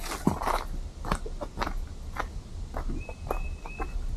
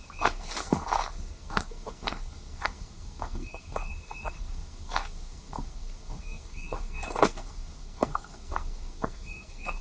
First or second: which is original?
first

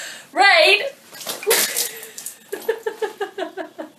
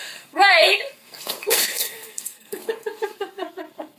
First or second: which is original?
first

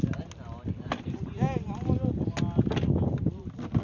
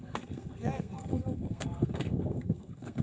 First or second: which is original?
first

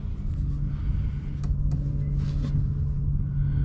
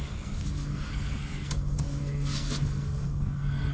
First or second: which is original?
first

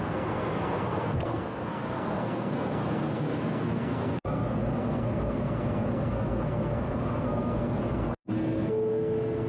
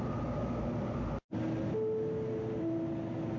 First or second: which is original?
second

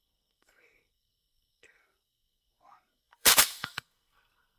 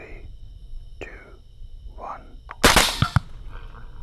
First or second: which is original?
second